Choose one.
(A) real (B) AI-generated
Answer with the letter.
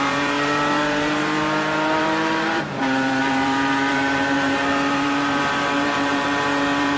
B